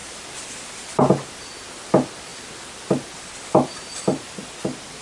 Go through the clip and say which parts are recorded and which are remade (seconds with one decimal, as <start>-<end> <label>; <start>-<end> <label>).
0.0-1.0 remade; 1.0-2.3 recorded; 2.3-4.5 remade; 4.5-5.0 recorded